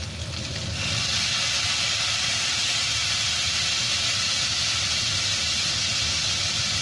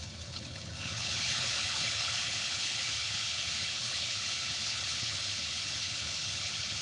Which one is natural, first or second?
first